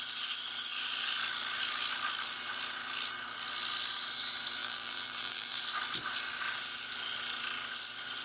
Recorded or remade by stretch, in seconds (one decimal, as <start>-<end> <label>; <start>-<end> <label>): 0.0-4.6 recorded; 4.6-5.6 remade; 5.6-8.2 recorded